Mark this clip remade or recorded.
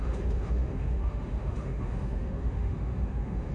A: remade